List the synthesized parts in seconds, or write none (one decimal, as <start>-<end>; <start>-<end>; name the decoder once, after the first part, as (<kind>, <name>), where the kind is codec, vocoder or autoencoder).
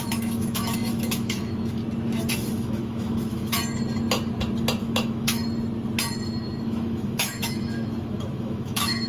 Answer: 0.0-1.8 (autoencoder, DAC-VAE); 2.3-3.6; 4.8-5.4; 6.6-9.1